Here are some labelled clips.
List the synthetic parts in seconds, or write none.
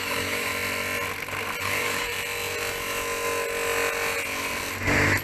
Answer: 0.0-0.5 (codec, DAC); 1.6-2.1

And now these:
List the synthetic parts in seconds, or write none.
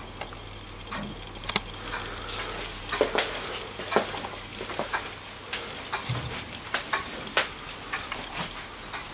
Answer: none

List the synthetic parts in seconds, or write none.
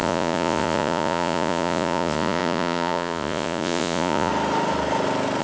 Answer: 0.0-4.3 (vocoder, Vocos)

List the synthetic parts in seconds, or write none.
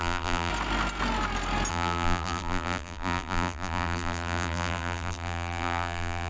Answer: 0.0-0.5 (vocoder, BigVGAN v2); 1.7-6.3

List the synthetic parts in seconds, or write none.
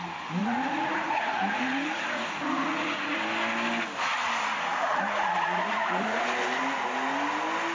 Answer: 0.4-3.2 (vocoder, Vocos); 4.5-6.2